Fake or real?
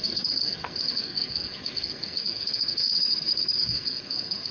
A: fake